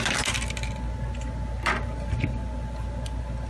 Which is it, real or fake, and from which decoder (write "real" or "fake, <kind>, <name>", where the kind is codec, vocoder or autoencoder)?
real